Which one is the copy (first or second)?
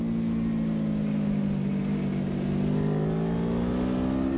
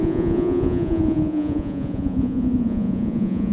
second